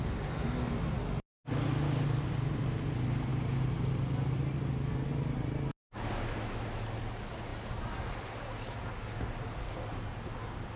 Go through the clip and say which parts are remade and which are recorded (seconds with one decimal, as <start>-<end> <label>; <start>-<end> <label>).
0.0-10.8 recorded